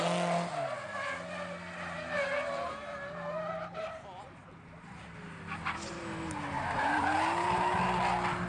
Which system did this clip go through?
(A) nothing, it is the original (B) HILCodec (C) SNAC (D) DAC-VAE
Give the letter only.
A